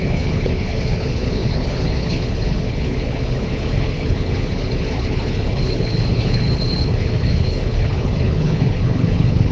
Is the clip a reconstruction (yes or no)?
yes